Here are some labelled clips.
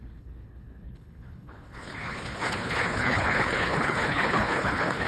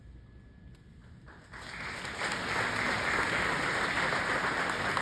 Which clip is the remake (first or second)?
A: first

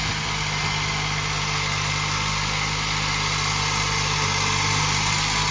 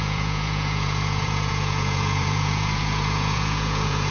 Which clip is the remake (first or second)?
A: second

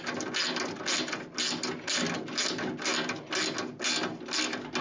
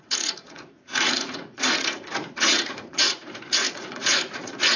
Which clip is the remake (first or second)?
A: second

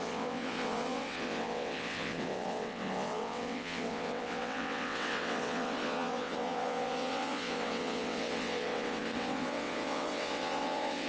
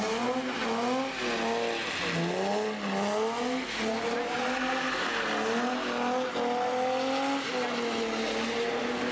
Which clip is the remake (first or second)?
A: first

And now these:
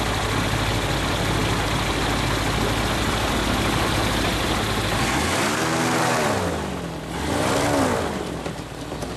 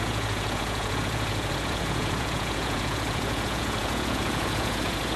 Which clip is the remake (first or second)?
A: second